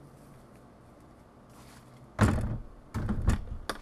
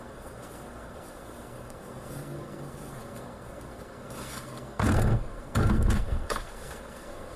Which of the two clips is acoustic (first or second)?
first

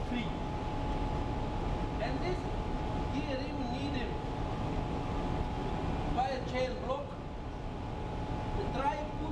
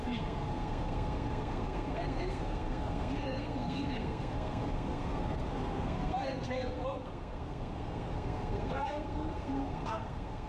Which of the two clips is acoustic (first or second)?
first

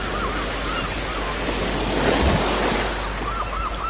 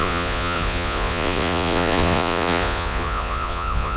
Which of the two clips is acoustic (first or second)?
first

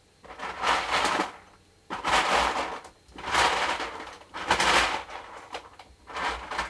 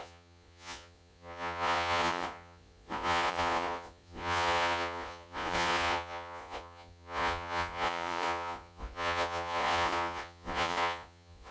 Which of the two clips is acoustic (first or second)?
first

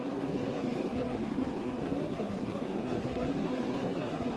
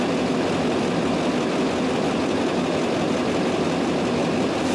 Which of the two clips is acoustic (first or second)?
second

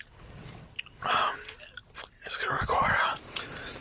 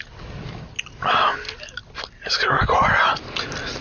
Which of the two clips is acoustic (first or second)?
second